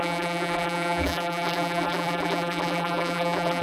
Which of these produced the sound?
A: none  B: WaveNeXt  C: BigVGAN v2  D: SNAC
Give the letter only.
C